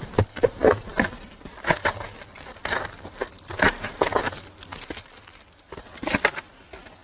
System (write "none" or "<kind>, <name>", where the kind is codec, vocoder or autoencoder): none